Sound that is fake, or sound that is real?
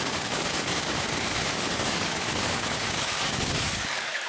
fake